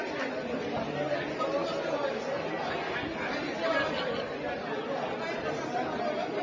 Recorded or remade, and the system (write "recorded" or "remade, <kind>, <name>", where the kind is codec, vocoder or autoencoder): recorded